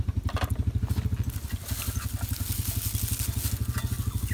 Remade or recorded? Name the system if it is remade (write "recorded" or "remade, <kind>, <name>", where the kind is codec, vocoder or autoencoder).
recorded